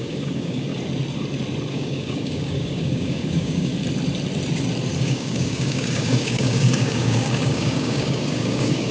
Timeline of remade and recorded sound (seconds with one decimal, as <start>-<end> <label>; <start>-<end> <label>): 0.0-0.7 remade; 0.7-1.7 recorded; 1.7-3.7 remade; 3.7-5.0 recorded; 5.0-8.9 remade